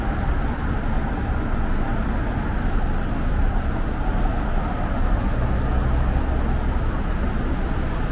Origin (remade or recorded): recorded